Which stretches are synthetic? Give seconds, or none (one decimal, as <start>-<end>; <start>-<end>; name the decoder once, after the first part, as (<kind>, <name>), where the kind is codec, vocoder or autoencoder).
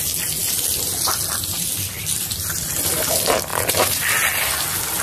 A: 0.4-2.9 (vocoder, BigVGAN v2); 3.5-4.5